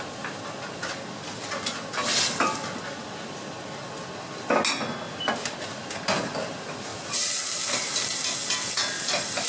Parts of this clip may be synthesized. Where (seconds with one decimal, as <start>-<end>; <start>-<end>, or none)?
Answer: 6.9-8.2